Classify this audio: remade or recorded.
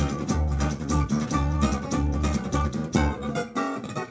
remade